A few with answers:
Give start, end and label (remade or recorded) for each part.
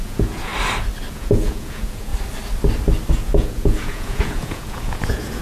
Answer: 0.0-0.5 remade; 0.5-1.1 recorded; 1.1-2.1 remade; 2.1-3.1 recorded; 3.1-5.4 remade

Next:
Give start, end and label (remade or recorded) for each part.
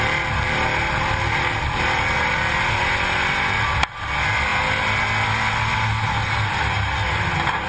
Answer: 0.0-7.7 recorded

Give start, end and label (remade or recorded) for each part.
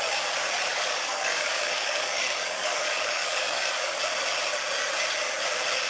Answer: 0.0-0.7 recorded; 0.7-4.0 remade; 4.0-5.9 recorded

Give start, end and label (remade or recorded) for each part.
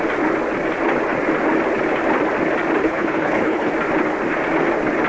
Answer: 0.0-2.8 recorded; 2.8-3.7 remade; 3.7-5.1 recorded